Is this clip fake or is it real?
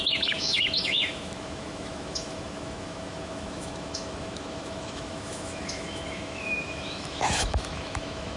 fake